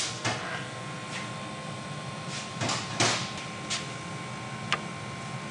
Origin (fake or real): real